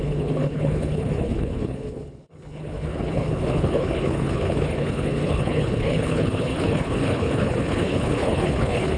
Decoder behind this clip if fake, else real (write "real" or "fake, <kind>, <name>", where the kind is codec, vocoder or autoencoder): fake, codec, HILCodec